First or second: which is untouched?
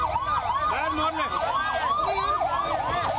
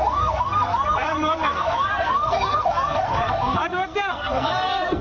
first